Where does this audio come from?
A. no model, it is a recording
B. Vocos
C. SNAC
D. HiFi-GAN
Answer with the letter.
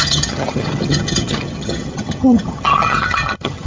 D